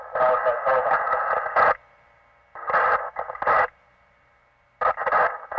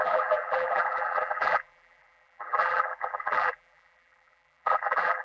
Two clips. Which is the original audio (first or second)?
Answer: first